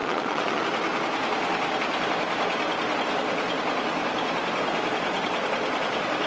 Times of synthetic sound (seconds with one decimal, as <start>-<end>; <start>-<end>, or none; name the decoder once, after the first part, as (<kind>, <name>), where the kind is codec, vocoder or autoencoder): 0.0-0.6 (vocoder, Vocos)